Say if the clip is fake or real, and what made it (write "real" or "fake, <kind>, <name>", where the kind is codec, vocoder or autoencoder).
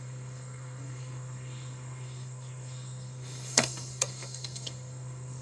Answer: fake, codec, SNAC